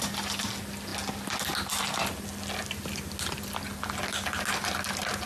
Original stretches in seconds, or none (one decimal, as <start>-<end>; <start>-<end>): 0.0-5.3